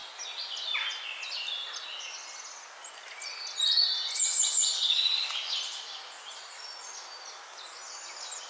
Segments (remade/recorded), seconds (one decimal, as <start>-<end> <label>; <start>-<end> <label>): 0.0-8.5 recorded